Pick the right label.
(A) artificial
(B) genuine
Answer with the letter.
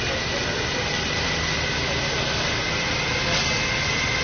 B